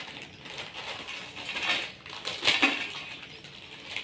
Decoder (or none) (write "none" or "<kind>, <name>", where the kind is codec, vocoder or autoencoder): none